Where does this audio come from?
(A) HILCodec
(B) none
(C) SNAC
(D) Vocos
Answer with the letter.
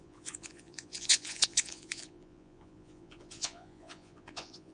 D